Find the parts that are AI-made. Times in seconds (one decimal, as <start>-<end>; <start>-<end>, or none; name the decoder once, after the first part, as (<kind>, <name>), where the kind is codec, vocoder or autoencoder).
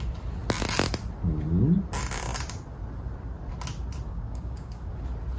4.1-4.9 (codec, DAC)